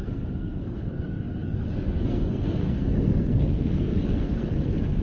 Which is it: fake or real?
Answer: fake